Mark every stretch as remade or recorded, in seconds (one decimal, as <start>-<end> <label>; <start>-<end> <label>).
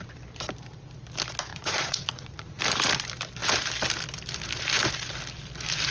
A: 0.0-1.5 recorded; 1.5-2.6 remade; 2.6-5.9 recorded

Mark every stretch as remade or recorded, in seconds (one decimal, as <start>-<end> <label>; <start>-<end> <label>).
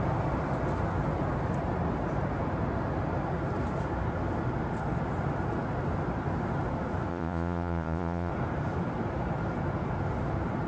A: 0.0-7.1 recorded; 7.1-8.3 remade; 8.3-10.7 recorded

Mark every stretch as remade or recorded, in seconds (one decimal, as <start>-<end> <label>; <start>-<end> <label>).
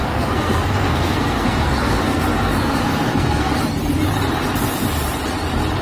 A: 0.0-3.5 remade; 3.5-5.8 recorded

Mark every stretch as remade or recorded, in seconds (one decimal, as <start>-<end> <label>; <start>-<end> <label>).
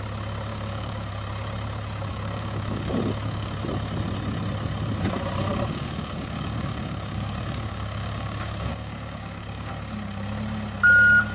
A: 0.0-0.5 recorded; 0.5-1.1 remade; 1.1-2.1 recorded; 2.1-3.5 remade; 3.5-5.5 recorded; 5.5-9.7 remade; 9.7-11.3 recorded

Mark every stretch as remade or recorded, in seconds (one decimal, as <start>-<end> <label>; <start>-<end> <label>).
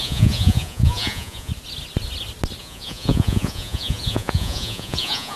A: 0.0-1.5 remade; 1.5-2.6 recorded; 2.6-5.4 remade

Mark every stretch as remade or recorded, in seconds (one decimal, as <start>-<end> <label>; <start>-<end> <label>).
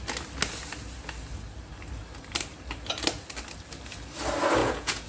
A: 0.0-4.6 recorded; 4.6-5.1 remade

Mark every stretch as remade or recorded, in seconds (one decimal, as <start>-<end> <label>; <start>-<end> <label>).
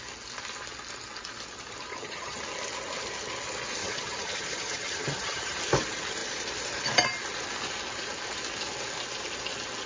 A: 0.0-1.9 recorded; 1.9-2.4 remade; 2.4-3.8 recorded; 3.8-5.6 remade; 5.6-9.9 recorded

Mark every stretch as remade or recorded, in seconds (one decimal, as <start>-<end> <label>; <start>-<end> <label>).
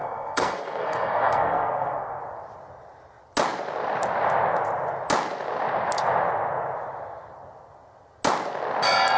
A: 0.0-2.2 remade; 2.2-9.2 recorded